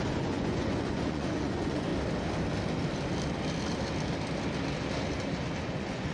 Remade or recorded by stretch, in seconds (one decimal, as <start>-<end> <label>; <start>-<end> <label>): 0.0-1.9 remade; 1.9-5.6 recorded; 5.6-6.1 remade